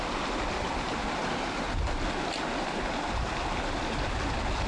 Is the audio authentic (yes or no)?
yes